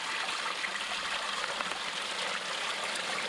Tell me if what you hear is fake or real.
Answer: real